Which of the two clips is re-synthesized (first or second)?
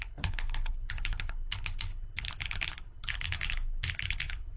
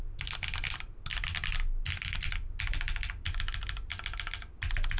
first